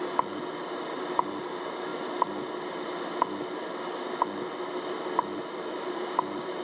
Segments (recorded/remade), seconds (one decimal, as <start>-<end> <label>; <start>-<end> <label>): 0.0-6.6 recorded